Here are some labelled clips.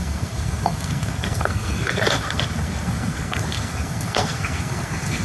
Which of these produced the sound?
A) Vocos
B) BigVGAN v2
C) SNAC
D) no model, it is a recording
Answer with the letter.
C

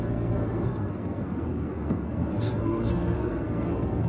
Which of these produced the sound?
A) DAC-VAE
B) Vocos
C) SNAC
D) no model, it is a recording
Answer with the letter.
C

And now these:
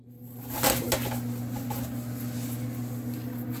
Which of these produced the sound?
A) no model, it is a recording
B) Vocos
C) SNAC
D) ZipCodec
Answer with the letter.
A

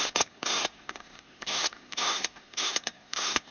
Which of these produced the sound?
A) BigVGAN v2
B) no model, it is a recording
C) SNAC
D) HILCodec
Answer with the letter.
C